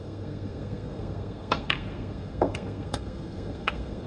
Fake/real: fake